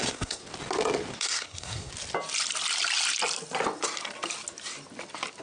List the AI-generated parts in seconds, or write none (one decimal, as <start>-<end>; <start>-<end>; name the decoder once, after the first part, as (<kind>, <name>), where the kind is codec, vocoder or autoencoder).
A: 0.0-0.4 (codec, SNAC); 1.2-1.9